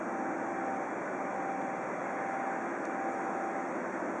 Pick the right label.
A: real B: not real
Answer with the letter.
A